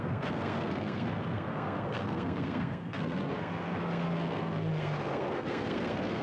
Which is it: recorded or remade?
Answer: remade